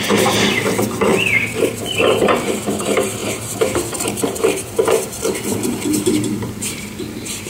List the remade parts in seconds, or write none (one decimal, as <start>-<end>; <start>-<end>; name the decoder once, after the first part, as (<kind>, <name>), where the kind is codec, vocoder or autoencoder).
0.0-7.5 (vocoder, BigVGAN v2)